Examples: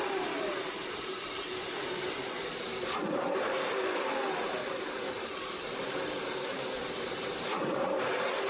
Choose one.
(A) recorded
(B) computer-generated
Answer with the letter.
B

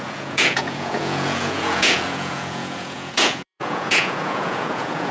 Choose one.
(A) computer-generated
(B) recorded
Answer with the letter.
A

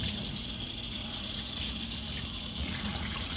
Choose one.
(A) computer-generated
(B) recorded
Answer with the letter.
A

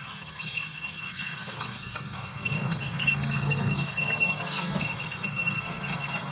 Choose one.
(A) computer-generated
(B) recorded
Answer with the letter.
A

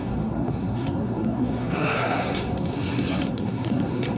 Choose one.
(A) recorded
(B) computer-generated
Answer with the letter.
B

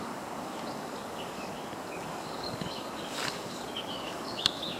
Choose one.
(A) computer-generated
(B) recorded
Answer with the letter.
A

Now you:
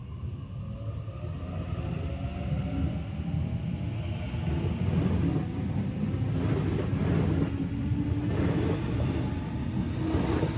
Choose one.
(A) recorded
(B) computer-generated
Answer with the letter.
A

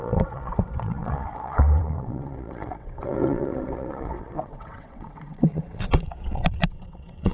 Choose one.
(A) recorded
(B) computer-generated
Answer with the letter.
B